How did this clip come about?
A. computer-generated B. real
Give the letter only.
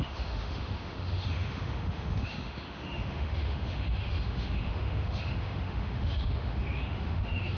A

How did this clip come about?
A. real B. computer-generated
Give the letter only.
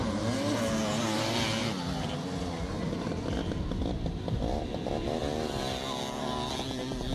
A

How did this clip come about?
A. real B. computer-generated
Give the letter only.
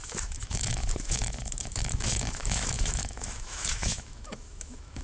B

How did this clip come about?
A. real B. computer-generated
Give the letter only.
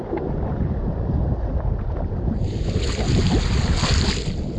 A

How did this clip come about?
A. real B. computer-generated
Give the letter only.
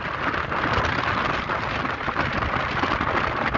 A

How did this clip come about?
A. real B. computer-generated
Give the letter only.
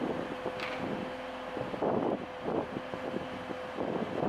A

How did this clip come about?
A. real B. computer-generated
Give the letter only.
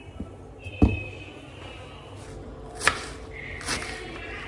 A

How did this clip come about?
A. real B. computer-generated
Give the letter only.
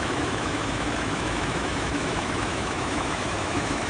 B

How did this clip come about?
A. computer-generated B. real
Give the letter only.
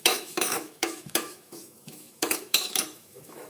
A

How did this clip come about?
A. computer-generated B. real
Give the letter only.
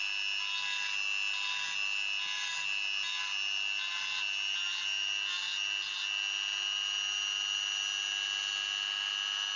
B